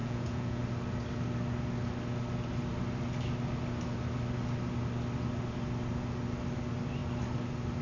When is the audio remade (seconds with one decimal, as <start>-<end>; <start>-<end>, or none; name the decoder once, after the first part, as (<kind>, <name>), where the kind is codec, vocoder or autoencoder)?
0.0-0.6 (vocoder, Vocos)